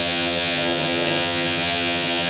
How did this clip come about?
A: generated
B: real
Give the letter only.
A